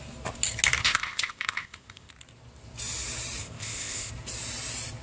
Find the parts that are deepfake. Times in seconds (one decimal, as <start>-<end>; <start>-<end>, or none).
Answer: 0.8-2.1; 3.4-4.1

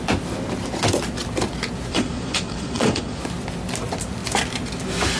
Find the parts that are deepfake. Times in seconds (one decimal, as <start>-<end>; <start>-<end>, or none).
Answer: 1.9-3.2

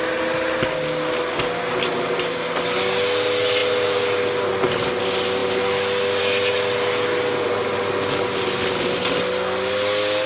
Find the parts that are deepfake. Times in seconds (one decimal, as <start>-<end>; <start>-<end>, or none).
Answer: none

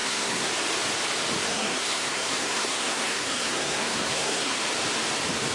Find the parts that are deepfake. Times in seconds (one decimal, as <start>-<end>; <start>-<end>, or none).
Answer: 0.0-0.5; 1.5-4.6

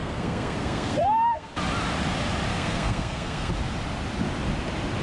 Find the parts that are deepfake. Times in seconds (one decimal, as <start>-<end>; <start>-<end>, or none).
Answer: 0.0-1.5; 2.5-3.5